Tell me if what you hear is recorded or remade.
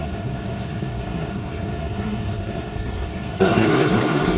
remade